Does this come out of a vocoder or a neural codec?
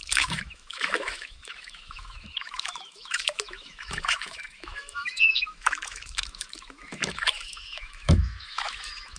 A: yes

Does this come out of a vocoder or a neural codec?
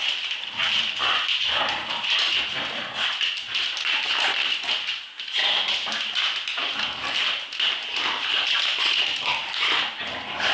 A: no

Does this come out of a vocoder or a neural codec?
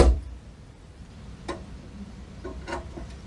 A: yes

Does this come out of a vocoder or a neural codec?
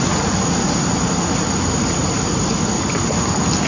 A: no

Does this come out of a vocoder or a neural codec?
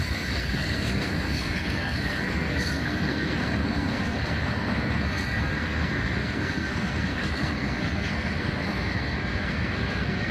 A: yes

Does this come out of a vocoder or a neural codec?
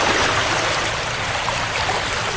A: yes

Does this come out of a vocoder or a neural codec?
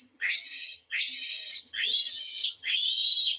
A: yes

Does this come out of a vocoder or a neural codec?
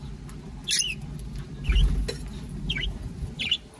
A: no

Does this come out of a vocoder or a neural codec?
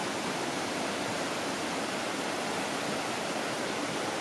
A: no